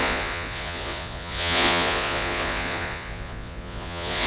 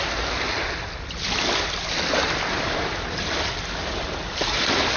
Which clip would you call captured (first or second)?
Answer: second